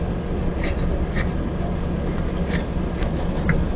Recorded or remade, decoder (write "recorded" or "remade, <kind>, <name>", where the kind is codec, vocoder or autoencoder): recorded